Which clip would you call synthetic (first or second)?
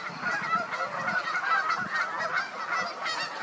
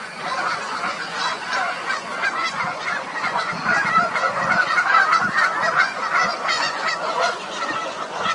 second